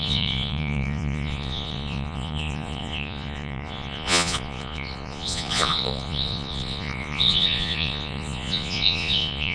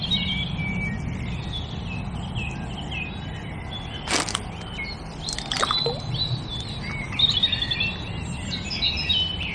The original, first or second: second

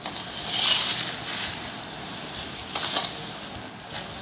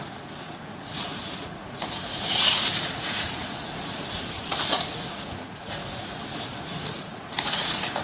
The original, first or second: first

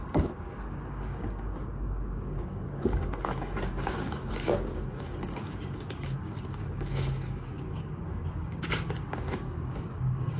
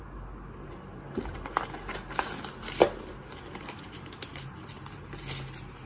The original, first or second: second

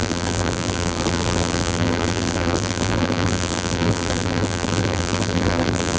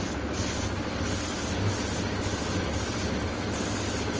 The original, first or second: second